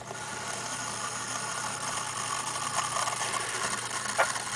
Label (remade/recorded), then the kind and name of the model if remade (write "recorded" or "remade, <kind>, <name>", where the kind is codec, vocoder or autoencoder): recorded